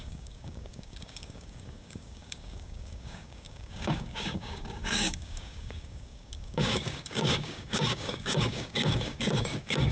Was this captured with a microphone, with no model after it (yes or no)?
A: no